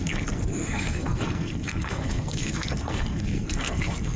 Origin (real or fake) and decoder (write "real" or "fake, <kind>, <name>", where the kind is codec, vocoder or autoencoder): fake, codec, SNAC